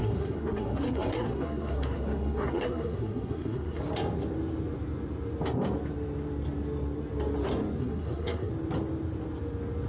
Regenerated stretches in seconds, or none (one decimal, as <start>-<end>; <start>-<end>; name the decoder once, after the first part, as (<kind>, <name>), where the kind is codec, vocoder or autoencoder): 0.0-3.8 (codec, SNAC); 7.8-8.5